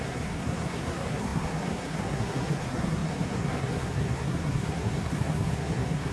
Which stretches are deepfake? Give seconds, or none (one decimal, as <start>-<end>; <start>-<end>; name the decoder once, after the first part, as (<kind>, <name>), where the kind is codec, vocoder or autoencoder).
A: 0.0-6.1 (codec, SNAC)